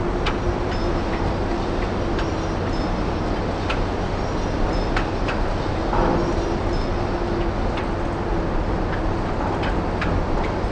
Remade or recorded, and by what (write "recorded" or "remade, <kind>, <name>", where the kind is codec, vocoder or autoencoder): recorded